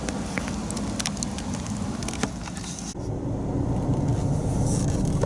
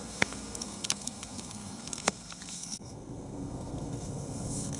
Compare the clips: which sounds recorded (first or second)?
first